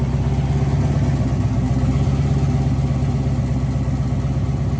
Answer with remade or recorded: recorded